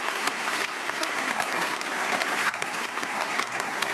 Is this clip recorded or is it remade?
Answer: remade